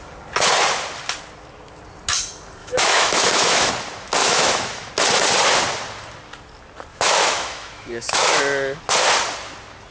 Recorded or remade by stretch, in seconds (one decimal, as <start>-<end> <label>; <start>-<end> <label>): 0.0-2.6 recorded; 2.6-3.7 remade; 3.7-4.2 recorded; 4.2-4.9 remade; 4.9-6.9 recorded; 6.9-8.4 remade; 8.4-9.9 recorded